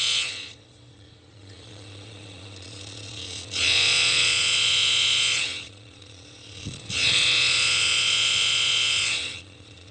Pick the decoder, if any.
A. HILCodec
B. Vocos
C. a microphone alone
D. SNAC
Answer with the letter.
B